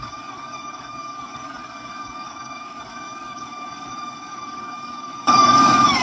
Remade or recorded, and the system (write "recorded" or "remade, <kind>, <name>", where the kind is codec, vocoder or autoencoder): remade, codec, DAC